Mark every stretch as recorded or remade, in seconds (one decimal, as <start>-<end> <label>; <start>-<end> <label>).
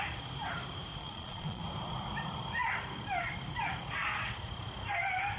0.0-1.0 recorded; 1.0-1.6 remade; 1.6-5.4 recorded